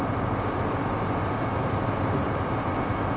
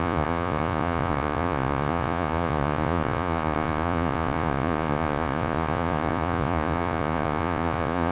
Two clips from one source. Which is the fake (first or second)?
second